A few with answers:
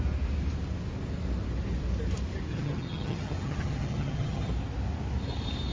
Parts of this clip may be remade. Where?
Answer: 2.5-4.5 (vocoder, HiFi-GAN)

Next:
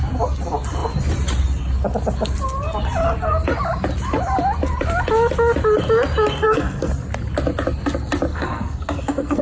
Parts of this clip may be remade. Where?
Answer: 6.4-6.9 (codec, SNAC); 8.3-9.4

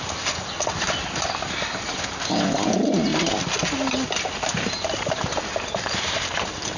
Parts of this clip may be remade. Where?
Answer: none

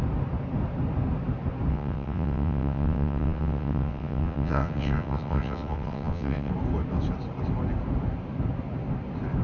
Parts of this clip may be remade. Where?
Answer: 1.7-6.5 (vocoder, WaveNeXt)

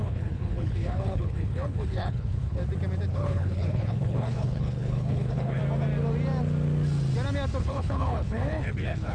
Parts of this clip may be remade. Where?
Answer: 0.0-2.6 (codec, HILCodec); 3.1-5.6; 7.6-9.1

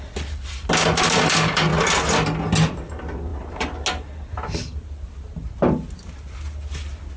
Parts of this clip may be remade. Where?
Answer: none